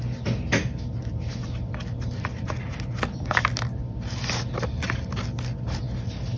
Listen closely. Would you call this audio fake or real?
real